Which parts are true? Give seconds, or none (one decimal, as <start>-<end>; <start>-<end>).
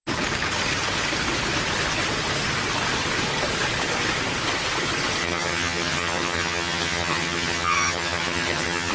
0.0-5.2